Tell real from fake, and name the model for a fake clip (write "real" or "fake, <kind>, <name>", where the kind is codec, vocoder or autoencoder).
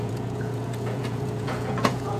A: fake, vocoder, Vocos